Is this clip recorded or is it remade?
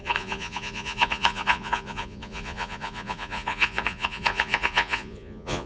remade